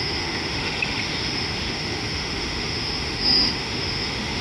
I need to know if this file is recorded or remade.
remade